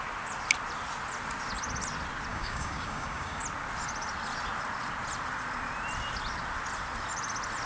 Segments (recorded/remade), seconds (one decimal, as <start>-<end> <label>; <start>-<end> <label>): 0.0-2.3 recorded; 2.3-3.4 remade; 3.4-7.7 recorded